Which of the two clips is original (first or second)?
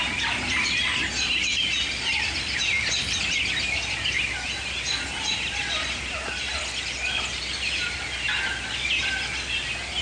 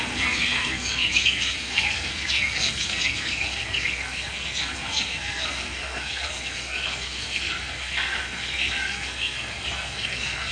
first